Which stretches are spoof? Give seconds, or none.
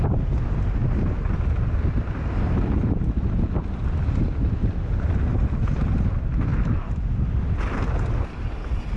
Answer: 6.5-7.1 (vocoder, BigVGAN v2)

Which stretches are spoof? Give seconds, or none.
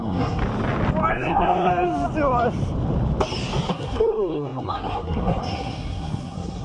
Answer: 0.0-0.4 (codec, SNAC); 1.1-1.7; 3.7-6.6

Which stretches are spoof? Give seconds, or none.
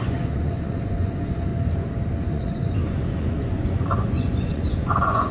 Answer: 0.0-1.5 (vocoder, Vocos); 2.2-5.3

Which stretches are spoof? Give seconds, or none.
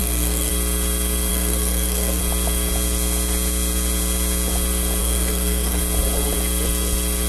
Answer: 0.0-0.5 (codec, SNAC); 1.3-2.2; 5.0-5.8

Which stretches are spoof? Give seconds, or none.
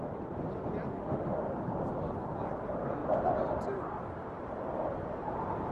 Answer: 0.9-1.4 (autoencoder, DAC-VAE)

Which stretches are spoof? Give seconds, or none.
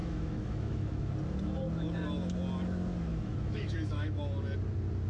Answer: 0.0-1.1 (autoencoder, DAC-VAE); 3.1-4.2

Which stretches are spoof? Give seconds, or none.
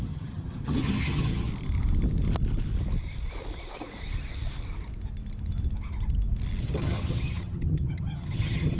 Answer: 0.0-1.5 (vocoder, HiFi-GAN); 6.6-8.8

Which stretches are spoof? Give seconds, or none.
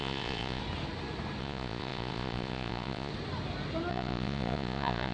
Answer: 0.0-0.6 (vocoder, Vocos); 1.4-3.1; 3.9-5.1